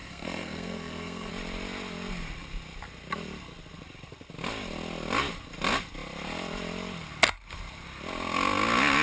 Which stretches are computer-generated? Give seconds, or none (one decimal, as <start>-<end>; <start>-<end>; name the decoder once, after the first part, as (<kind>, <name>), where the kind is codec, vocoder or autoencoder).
0.0-1.3 (codec, SNAC)